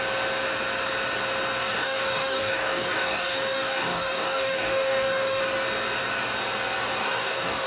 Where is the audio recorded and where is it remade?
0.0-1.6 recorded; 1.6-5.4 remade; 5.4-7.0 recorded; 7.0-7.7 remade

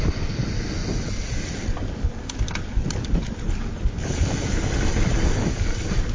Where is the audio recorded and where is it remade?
0.0-6.1 recorded

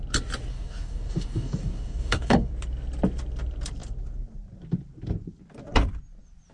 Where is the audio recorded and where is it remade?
0.0-0.5 recorded; 0.5-2.5 remade; 2.5-6.5 recorded

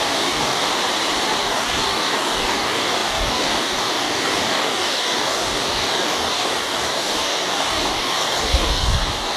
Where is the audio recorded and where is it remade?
0.0-0.7 remade; 0.7-1.4 recorded; 1.4-9.4 remade

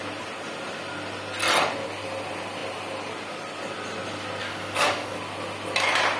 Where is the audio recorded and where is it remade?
0.0-4.4 recorded; 4.4-5.2 remade; 5.2-6.2 recorded

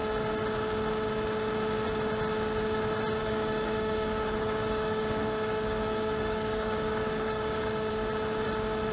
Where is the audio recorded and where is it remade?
0.0-3.2 recorded; 3.2-7.9 remade; 7.9-8.9 recorded

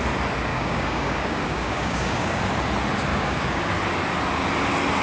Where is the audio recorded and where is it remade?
0.0-0.5 recorded; 0.5-2.4 remade; 2.4-3.1 recorded; 3.1-3.6 remade; 3.6-5.0 recorded